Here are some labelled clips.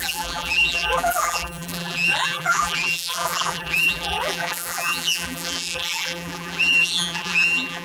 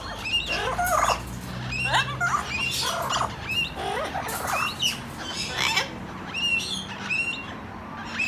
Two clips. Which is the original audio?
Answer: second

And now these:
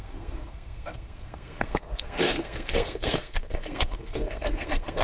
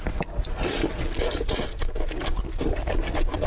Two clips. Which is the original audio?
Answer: second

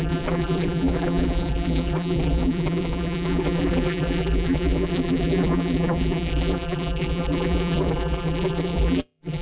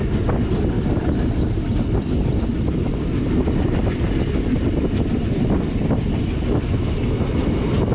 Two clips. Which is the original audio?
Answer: second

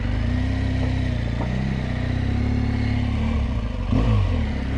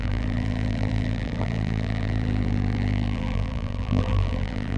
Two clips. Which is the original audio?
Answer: first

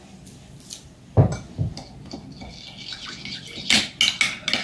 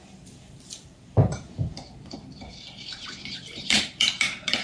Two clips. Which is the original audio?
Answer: first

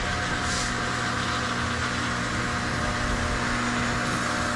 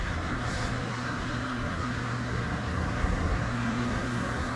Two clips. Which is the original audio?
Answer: first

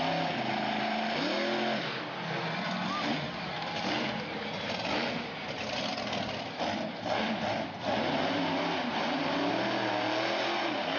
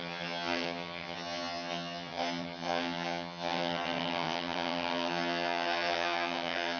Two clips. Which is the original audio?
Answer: first